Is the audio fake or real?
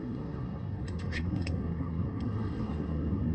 fake